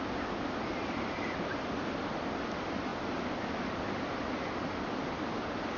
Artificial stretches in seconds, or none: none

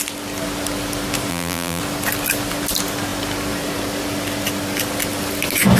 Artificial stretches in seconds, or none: 1.3-1.8 (vocoder, BigVGAN v2)

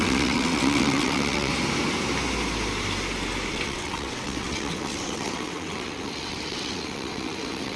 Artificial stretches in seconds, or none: 0.0-1.5 (vocoder, WaveNeXt); 3.5-7.8

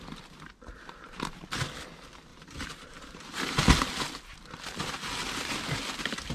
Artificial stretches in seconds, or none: 2.3-3.6 (vocoder, BigVGAN v2)

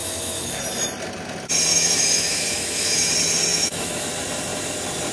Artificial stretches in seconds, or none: 0.0-0.6 (autoencoder, DAC-VAE); 1.7-3.1; 3.5-4.1

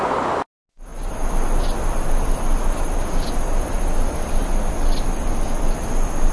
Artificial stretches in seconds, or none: none

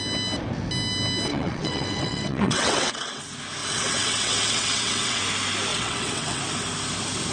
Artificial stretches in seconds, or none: 1.3-3.2 (vocoder, WaveNeXt); 3.6-5.2; 5.7-6.4

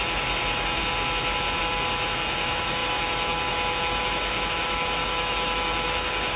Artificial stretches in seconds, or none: 0.0-0.8 (autoencoder, DAC-VAE); 1.6-6.4